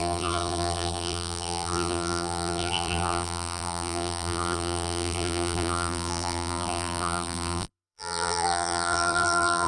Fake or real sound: fake